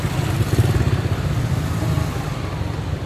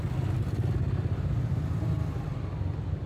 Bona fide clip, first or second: second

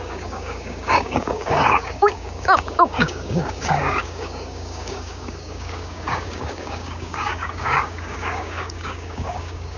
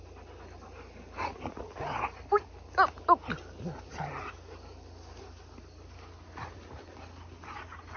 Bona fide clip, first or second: second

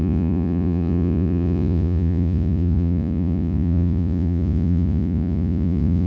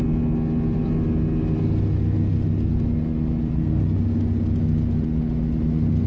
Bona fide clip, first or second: second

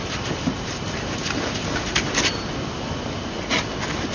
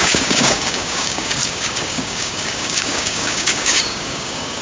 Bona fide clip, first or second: first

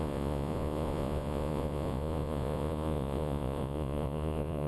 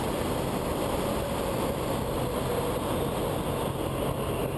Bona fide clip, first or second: second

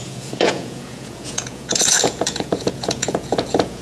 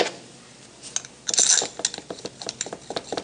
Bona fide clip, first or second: second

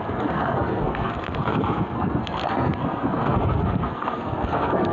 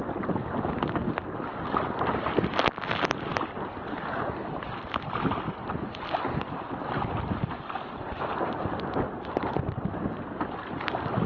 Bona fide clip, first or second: second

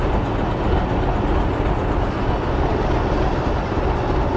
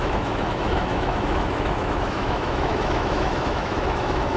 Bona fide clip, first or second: first